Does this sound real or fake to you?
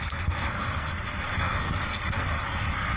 fake